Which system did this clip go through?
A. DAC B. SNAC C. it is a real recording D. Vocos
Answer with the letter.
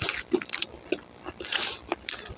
C